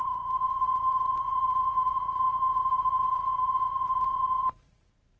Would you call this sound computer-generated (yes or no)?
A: yes